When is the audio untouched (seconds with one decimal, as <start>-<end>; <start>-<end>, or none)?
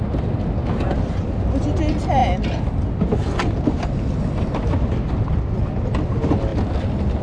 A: 0.0-7.2